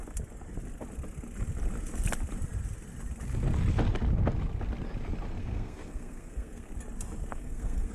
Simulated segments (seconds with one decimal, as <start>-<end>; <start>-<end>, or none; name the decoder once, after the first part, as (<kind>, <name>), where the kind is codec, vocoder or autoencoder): 5.4-6.7 (codec, SNAC); 7.3-7.9